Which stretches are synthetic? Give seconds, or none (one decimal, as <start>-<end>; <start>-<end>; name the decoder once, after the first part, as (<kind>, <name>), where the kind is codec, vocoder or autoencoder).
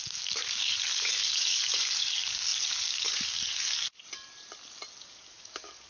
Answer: 0.0-4.0 (codec, DAC); 5.1-5.9